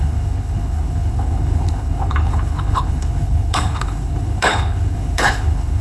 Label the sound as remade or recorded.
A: remade